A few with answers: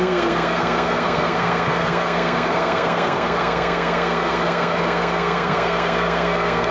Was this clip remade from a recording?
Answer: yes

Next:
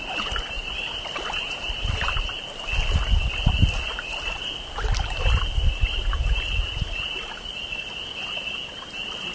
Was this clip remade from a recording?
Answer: no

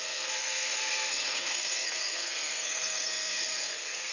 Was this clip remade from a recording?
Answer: yes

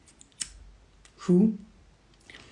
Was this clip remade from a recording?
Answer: no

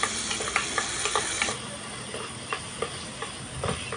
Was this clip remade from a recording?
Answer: no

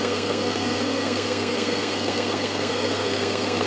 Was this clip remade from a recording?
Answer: yes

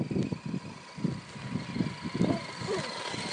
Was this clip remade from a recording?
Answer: no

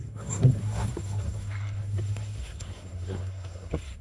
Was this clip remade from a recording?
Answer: yes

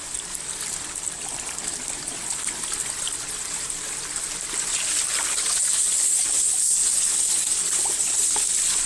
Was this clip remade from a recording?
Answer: no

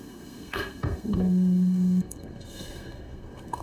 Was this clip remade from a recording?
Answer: yes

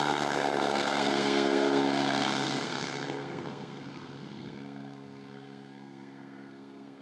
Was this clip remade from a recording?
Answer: yes